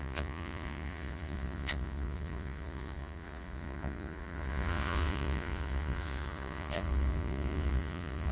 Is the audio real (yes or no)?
no